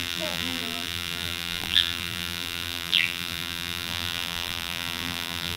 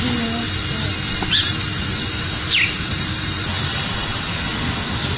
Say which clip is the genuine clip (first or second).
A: second